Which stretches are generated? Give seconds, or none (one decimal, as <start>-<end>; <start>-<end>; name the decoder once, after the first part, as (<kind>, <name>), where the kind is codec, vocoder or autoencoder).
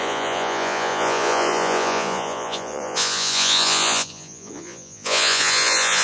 0.0-6.0 (vocoder, Vocos)